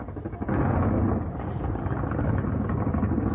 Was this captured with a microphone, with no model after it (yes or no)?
yes